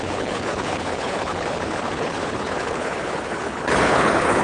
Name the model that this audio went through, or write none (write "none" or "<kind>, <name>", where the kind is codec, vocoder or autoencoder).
codec, HILCodec